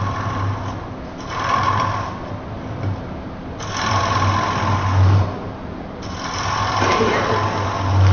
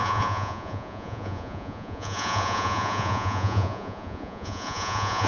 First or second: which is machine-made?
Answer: second